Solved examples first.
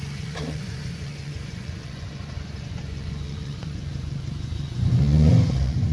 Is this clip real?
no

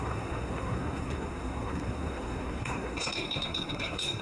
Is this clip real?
no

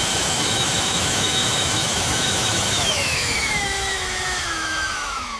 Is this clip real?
no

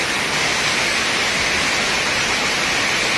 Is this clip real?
yes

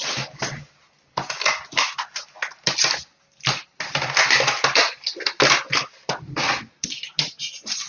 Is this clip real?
yes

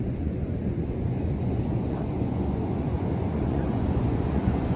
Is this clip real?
no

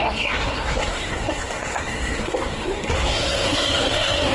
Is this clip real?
no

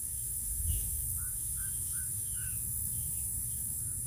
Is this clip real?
no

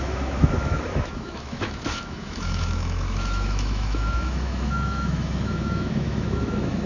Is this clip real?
no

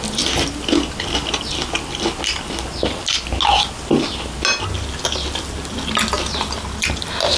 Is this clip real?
yes